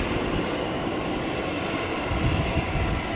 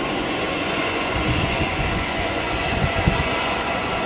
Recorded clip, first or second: first